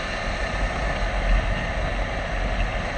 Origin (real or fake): real